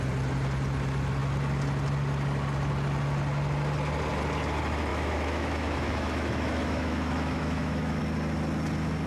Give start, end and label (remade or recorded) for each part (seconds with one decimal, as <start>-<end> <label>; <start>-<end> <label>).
0.0-4.9 recorded; 4.9-8.0 remade; 8.0-9.1 recorded